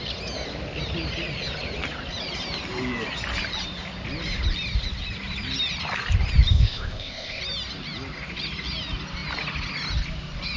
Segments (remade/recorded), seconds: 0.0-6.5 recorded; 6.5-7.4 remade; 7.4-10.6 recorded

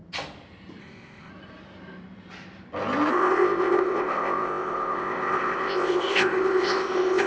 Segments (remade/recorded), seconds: 0.0-0.8 recorded; 0.8-1.3 remade; 1.3-3.1 recorded; 3.1-7.3 remade

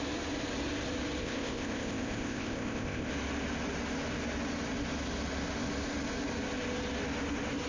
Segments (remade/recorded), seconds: 0.0-1.2 recorded; 1.2-3.1 remade; 3.1-7.7 recorded